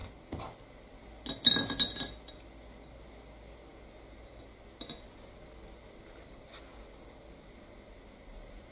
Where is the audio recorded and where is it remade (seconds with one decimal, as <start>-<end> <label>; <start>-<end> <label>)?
0.0-8.7 recorded